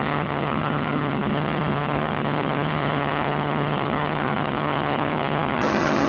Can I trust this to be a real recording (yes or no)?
no